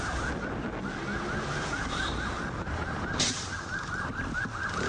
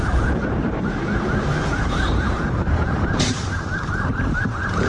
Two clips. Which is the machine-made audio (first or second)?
second